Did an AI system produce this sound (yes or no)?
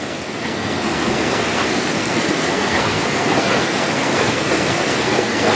yes